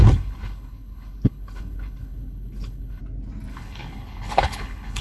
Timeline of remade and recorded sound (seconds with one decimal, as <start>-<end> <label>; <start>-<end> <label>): 0.0-3.0 remade; 3.0-3.5 recorded; 3.5-5.0 remade